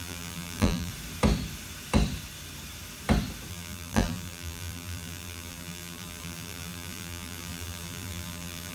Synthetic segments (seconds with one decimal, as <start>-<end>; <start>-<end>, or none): 0.0-0.9; 3.5-8.7